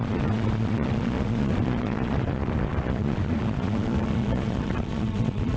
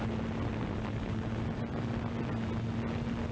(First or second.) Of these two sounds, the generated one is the first